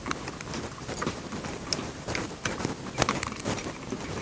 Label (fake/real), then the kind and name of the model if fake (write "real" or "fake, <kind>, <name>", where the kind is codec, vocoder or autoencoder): real